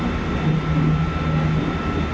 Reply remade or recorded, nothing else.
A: recorded